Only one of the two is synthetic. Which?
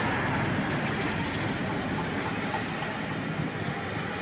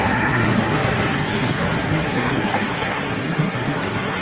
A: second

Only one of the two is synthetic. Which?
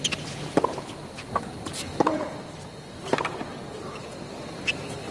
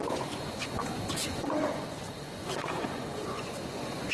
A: second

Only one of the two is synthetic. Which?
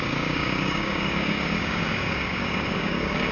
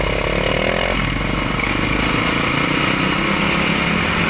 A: first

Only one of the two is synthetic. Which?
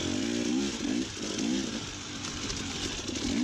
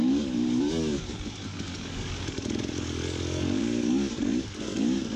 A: second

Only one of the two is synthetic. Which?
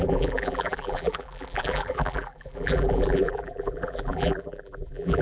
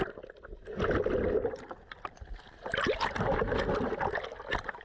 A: first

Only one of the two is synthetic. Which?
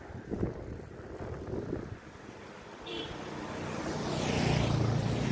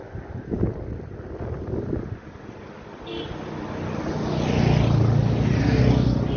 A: first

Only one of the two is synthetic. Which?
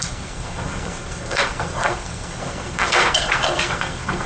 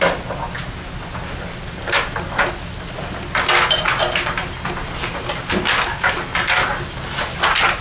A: first